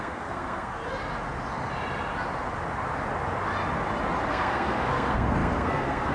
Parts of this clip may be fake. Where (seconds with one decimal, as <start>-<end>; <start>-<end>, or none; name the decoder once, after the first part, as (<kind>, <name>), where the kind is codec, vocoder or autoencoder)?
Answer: 0.0-0.8 (codec, SNAC); 4.3-6.1